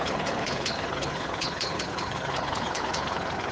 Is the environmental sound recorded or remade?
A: remade